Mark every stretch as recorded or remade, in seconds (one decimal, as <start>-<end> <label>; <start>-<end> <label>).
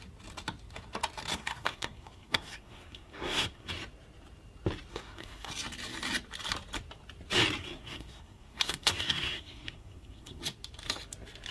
0.0-1.3 recorded; 1.3-3.7 remade; 3.7-4.9 recorded; 4.9-5.5 remade; 5.5-7.6 recorded; 7.6-10.4 remade; 10.4-11.5 recorded